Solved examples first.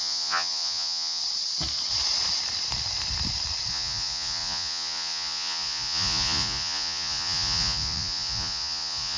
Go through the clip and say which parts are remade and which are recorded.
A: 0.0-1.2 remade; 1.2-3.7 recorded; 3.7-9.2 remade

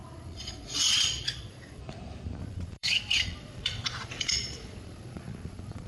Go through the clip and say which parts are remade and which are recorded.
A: 0.0-1.8 remade; 1.8-2.4 recorded; 2.4-5.9 remade

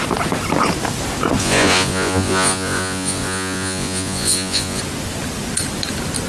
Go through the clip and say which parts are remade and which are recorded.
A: 0.0-1.4 recorded; 1.4-4.8 remade; 4.8-6.3 recorded

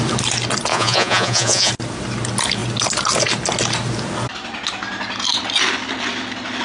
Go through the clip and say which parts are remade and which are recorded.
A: 0.0-0.7 recorded; 0.7-1.7 remade; 1.7-6.6 recorded

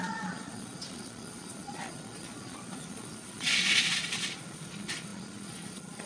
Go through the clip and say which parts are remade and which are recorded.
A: 0.0-6.1 remade